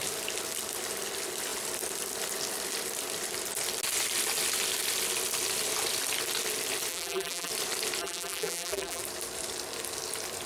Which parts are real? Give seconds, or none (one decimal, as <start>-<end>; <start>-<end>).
0.0-6.9; 7.5-8.0; 9.0-10.5